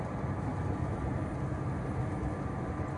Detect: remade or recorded recorded